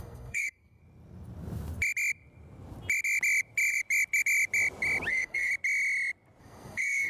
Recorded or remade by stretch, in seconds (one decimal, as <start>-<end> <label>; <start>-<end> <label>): 0.0-0.8 remade; 0.8-5.1 recorded; 5.1-5.5 remade; 5.5-6.4 recorded; 6.4-7.1 remade